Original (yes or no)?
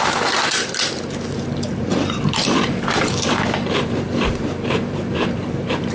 no